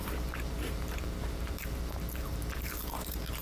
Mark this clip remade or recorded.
remade